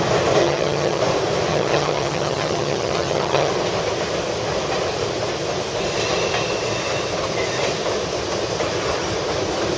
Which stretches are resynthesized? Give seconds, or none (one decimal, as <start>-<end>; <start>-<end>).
0.4-1.0; 1.5-3.5